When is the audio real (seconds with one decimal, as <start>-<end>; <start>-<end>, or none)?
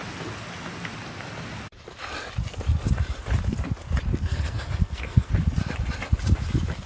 0.0-4.1; 5.3-6.9